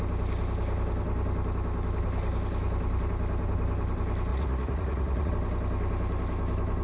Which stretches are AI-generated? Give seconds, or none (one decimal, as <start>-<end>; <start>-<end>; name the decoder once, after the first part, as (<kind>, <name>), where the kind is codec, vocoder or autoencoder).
4.3-5.3 (vocoder, Vocos)